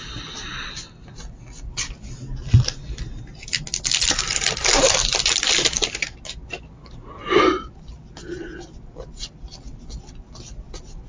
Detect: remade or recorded recorded